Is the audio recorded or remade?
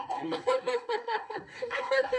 remade